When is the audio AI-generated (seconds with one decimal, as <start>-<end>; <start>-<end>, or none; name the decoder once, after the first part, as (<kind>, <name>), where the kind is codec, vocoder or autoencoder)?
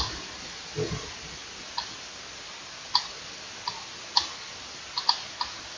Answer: none